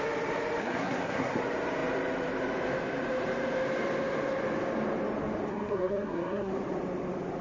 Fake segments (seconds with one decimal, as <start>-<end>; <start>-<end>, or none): 0.6-1.4; 5.5-6.5